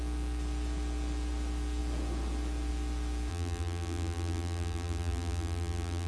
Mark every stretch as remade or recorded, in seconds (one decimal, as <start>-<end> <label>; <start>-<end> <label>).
0.0-3.3 recorded; 3.3-6.1 remade